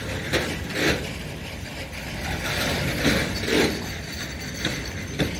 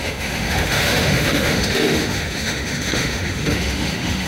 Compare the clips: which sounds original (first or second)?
first